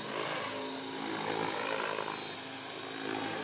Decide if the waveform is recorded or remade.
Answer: recorded